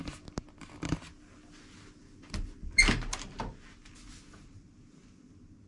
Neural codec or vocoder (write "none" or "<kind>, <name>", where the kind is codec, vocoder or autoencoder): none